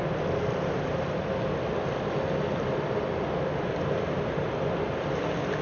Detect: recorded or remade recorded